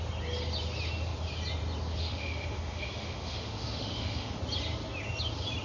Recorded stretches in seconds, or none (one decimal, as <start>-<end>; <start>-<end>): 0.0-2.0; 4.4-5.6